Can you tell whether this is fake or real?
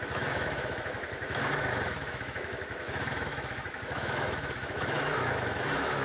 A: fake